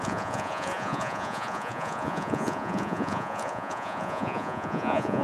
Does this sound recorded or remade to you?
remade